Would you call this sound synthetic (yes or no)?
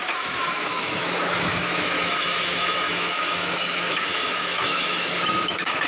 yes